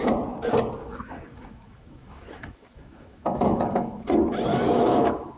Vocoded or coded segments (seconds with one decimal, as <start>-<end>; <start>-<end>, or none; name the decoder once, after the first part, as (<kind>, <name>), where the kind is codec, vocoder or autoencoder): 0.8-4.0 (autoencoder, DAC-VAE); 4.5-5.4